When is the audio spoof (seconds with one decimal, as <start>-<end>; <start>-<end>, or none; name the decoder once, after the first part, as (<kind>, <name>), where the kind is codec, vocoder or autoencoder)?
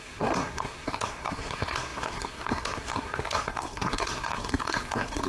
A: 0.0-5.3 (codec, SNAC)